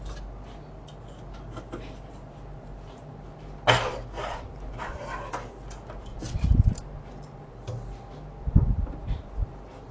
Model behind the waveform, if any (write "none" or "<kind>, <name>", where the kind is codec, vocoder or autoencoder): none